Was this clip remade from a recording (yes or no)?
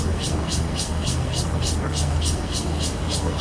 yes